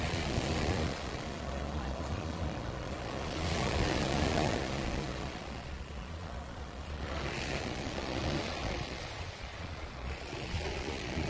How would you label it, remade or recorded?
remade